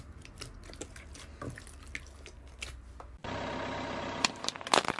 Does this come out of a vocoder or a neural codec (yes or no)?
no